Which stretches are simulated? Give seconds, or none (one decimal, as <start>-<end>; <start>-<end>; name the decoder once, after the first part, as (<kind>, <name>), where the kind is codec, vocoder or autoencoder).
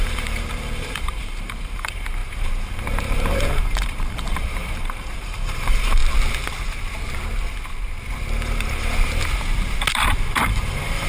0.0-6.0 (vocoder, BigVGAN v2); 10.4-11.1